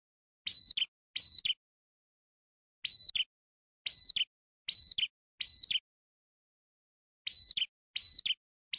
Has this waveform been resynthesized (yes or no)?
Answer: no